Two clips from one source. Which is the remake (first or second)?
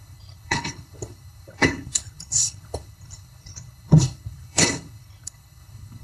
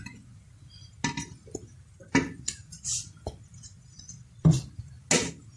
first